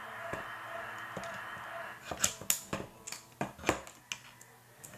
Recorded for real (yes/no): yes